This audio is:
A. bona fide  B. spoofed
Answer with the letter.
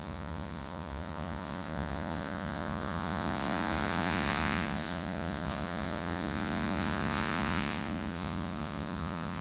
B